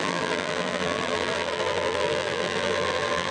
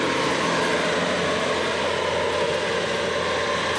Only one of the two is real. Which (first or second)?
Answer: second